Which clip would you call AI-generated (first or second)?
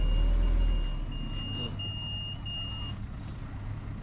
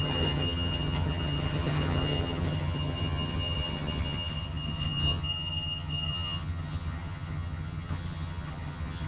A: second